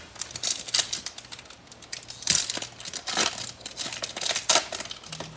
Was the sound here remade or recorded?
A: recorded